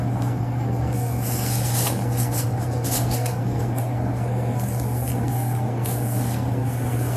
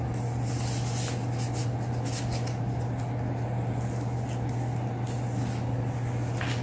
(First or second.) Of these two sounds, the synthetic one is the first